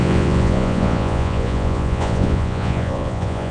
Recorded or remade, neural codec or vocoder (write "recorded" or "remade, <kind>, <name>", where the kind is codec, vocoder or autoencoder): remade, vocoder, Vocos